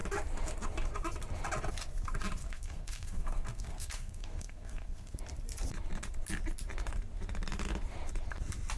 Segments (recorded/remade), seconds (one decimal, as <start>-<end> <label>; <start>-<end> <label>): 0.0-2.4 recorded; 2.4-5.2 remade; 5.2-8.8 recorded